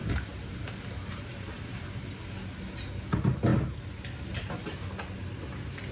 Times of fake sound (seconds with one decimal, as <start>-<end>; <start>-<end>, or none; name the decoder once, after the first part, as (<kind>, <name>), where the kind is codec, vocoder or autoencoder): 0.0-1.9 (vocoder, BigVGAN v2)